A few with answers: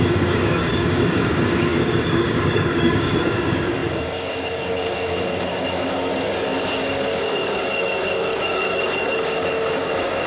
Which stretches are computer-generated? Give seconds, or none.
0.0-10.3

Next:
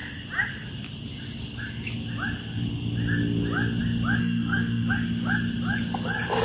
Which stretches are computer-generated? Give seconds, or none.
4.2-4.9

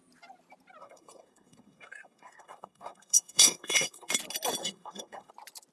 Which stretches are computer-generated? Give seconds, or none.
0.8-4.1; 4.6-5.3

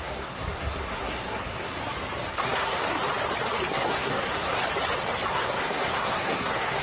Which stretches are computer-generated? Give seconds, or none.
0.0-1.7; 2.3-3.0; 3.7-4.6; 5.3-6.8

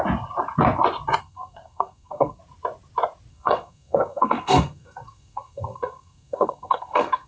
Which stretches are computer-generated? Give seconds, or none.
1.2-2.4; 3.3-7.3

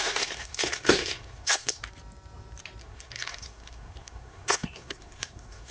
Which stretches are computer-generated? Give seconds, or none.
0.0-1.8; 2.8-5.7